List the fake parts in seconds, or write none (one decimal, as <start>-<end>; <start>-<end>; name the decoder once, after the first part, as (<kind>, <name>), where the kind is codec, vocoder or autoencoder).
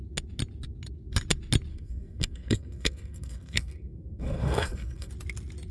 1.7-5.1 (codec, SNAC)